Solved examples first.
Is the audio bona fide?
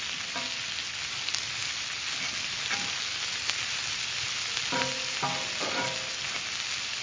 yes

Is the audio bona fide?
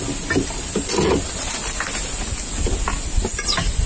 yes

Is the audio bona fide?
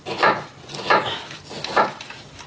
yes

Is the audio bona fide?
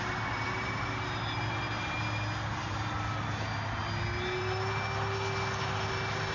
yes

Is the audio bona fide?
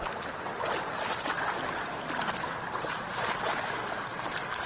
yes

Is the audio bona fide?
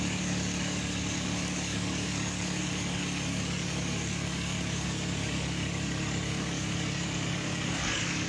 no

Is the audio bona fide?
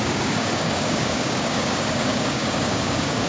no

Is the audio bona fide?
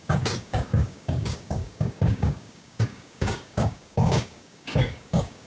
no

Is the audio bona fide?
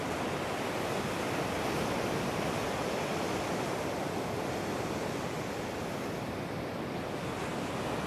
yes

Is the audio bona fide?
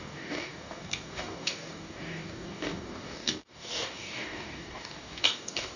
no